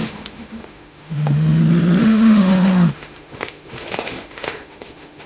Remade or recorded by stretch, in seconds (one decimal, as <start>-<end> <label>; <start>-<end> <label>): 0.0-1.6 remade; 1.6-2.0 recorded; 2.0-5.3 remade